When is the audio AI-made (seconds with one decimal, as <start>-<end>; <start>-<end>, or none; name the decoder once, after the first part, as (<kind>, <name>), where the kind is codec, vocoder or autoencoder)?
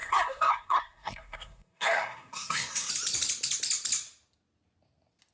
0.0-2.9 (codec, SNAC)